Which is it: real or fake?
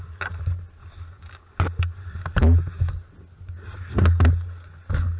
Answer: real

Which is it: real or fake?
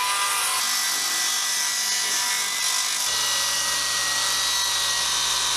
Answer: real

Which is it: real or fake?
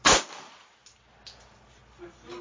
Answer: real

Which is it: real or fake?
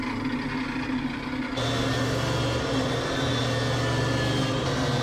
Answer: real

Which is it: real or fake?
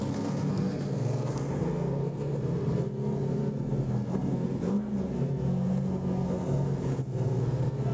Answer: fake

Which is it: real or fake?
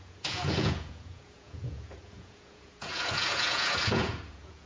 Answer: fake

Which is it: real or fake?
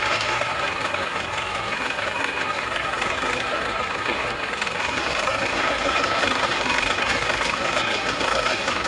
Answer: fake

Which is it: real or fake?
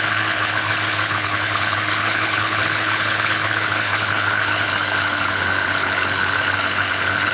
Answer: fake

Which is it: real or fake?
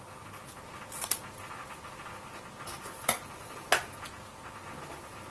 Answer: real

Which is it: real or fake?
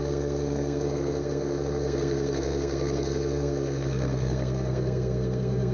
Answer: fake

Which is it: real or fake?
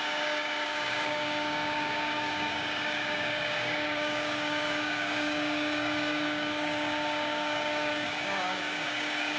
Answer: fake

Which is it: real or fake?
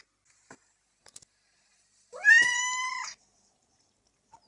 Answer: real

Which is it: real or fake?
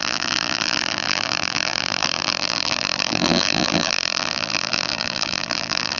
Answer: fake